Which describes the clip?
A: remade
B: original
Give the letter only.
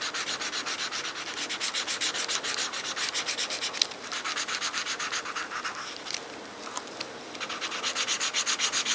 B